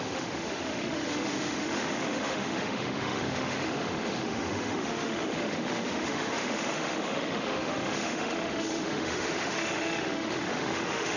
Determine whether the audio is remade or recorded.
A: remade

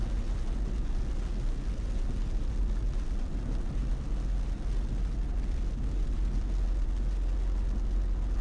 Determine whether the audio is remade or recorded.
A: recorded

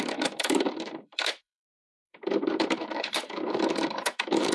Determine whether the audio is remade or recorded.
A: remade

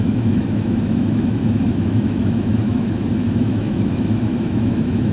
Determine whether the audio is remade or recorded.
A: remade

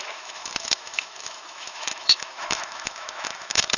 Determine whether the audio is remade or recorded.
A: remade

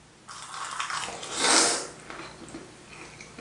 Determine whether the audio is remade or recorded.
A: recorded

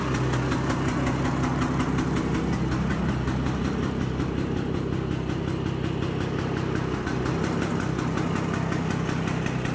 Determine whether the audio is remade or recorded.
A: recorded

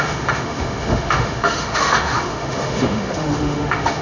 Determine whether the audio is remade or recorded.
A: remade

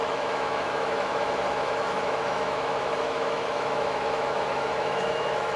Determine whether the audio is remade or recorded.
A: remade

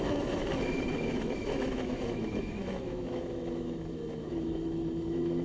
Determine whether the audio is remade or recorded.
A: remade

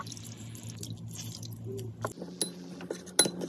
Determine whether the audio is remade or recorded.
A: recorded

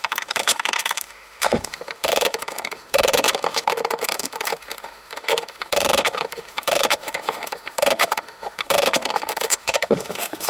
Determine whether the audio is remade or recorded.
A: remade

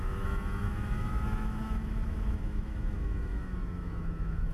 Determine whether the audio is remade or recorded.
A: remade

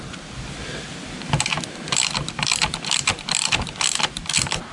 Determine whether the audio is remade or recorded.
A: recorded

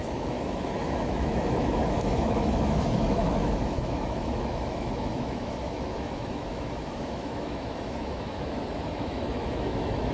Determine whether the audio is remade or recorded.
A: remade